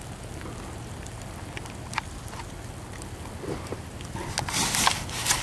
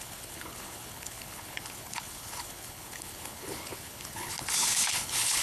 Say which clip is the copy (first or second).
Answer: second